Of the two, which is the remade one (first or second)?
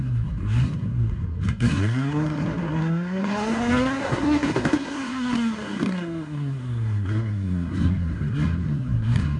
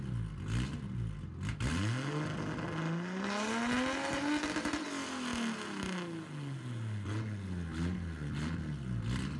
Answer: first